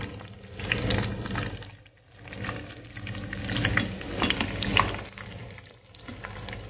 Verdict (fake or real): real